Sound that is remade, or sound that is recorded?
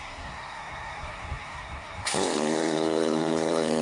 remade